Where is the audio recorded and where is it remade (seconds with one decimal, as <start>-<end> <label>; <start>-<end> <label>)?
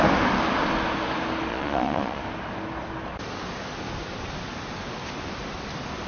0.0-1.5 recorded; 1.5-2.2 remade; 2.2-6.1 recorded